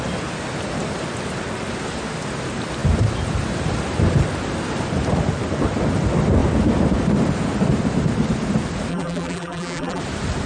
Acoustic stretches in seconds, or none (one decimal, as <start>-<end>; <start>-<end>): 0.0-8.9; 10.0-10.5